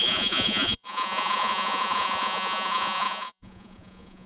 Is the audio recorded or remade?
remade